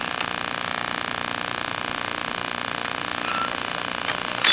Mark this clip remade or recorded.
recorded